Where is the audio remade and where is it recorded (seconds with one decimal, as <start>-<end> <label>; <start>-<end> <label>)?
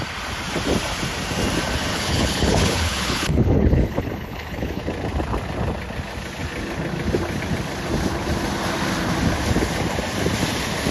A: 0.0-1.9 recorded; 1.9-4.8 remade; 4.8-10.9 recorded